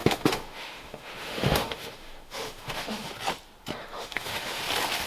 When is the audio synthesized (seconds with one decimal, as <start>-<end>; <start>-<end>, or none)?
0.0-3.1; 3.8-4.6